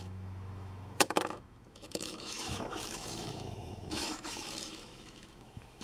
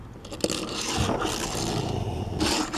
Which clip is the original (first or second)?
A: second